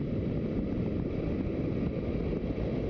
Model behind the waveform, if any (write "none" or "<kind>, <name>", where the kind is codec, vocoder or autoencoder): none